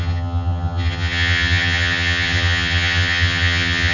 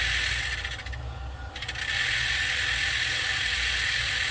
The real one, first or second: second